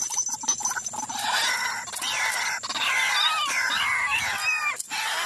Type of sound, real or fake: real